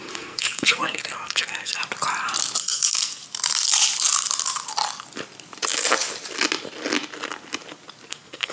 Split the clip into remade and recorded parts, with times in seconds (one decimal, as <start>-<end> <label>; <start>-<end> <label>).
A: 0.0-1.8 remade; 1.8-2.6 recorded; 2.6-3.2 remade; 3.2-8.1 recorded; 8.1-8.5 remade